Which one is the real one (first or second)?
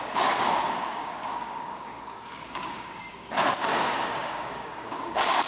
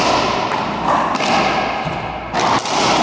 second